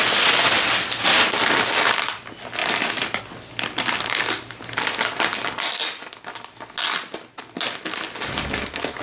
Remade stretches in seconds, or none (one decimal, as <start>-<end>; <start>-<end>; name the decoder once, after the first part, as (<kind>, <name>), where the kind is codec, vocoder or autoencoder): 2.6-3.2 (vocoder, BigVGAN v2)